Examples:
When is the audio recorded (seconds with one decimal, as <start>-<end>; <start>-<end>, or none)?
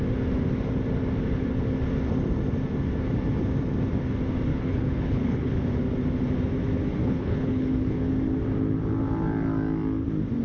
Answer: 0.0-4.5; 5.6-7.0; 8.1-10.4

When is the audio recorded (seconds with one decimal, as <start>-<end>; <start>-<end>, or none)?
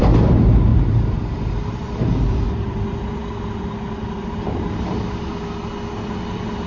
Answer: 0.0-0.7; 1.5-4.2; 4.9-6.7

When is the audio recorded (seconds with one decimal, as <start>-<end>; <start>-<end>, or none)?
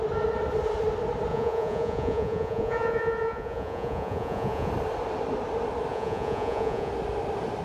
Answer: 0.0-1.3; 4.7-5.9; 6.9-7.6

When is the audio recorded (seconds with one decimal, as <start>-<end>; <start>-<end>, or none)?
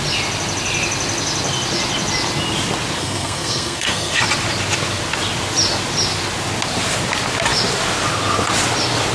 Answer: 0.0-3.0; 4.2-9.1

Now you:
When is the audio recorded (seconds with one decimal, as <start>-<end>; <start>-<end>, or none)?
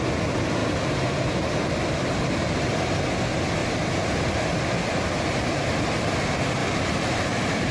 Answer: 0.0-6.6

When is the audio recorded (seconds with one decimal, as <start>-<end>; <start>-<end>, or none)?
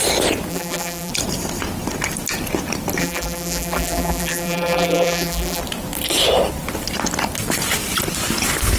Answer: 0.0-0.5; 1.1-3.0; 5.6-8.8